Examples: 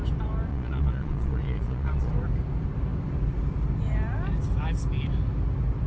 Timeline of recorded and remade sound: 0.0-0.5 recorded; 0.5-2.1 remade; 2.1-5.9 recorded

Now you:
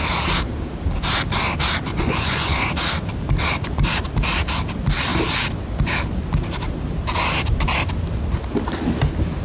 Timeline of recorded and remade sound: 0.0-1.9 recorded; 1.9-2.7 remade; 2.7-9.4 recorded

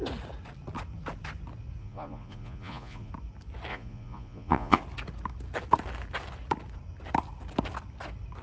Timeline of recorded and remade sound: 0.0-1.8 recorded; 1.8-3.1 remade; 3.1-3.7 recorded; 3.7-4.8 remade; 4.8-8.4 recorded

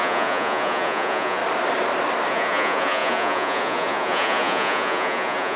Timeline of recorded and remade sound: 0.0-1.4 remade; 1.4-2.3 recorded; 2.3-5.6 remade

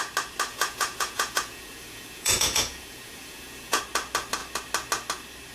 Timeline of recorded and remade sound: 0.0-0.5 recorded; 0.5-3.8 remade; 3.8-5.5 recorded

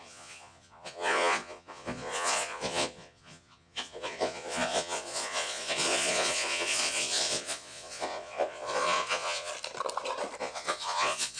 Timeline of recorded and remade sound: 0.0-9.5 remade; 9.5-10.4 recorded; 10.4-11.4 remade

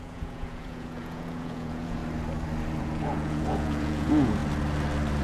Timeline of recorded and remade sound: 0.0-2.0 remade; 2.0-2.8 recorded; 2.8-4.4 remade; 4.4-5.2 recorded

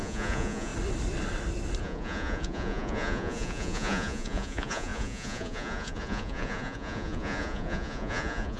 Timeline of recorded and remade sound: 0.0-0.7 remade; 0.7-1.8 recorded; 1.8-8.6 remade